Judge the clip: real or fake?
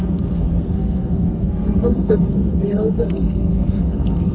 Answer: fake